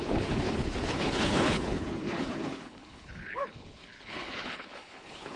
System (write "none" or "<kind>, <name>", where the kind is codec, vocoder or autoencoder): codec, HILCodec